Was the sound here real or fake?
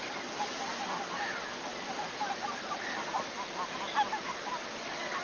real